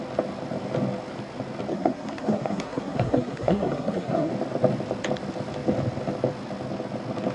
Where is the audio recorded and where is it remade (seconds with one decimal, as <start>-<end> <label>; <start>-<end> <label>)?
0.0-1.7 recorded; 1.7-4.3 remade; 4.3-7.3 recorded